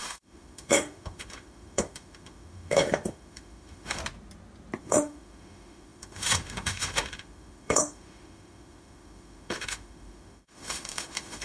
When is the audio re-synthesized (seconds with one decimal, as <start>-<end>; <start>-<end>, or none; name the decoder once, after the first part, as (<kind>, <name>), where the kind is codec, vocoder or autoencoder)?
0.0-4.0 (autoencoder, DAC-VAE); 4.8-11.4